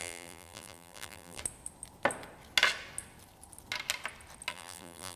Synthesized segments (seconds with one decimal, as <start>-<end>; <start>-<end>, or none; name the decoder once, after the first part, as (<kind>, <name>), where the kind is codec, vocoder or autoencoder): 0.0-1.4 (vocoder, BigVGAN v2); 4.5-5.2